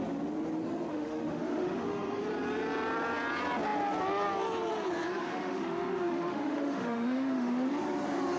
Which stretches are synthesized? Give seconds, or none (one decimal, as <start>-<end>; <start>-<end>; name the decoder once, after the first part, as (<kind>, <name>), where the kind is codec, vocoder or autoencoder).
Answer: 0.9-2.2 (autoencoder, DAC-VAE); 5.2-7.7